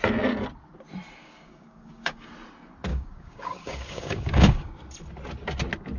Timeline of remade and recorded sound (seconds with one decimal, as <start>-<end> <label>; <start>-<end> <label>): 0.0-1.2 recorded; 1.2-2.3 remade; 2.3-2.9 recorded; 2.9-4.7 remade; 4.7-6.0 recorded